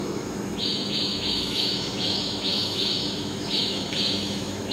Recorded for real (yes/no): no